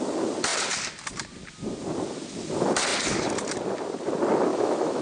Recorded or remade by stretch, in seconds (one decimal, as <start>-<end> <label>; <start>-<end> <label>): 0.0-4.5 recorded; 4.5-5.0 remade

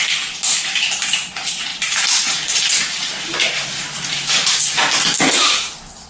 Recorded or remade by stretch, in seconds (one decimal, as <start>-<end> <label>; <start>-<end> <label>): 0.0-1.7 recorded; 1.7-4.6 remade; 4.6-6.1 recorded

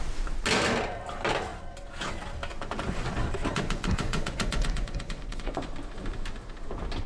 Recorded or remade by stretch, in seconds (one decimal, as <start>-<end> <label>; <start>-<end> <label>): 0.0-2.5 recorded; 2.5-3.1 remade; 3.1-3.5 recorded; 3.5-5.7 remade; 5.7-7.1 recorded